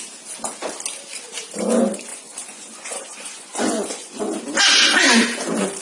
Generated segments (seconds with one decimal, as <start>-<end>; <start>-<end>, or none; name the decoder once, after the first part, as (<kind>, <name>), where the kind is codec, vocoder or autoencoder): 2.1-4.2 (vocoder, Vocos)